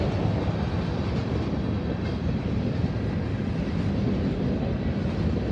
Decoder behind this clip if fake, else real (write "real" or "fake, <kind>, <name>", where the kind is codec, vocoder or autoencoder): real